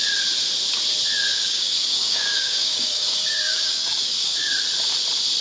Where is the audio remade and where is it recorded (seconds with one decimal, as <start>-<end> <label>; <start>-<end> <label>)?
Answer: 0.0-1.3 recorded; 1.3-4.5 remade; 4.5-5.4 recorded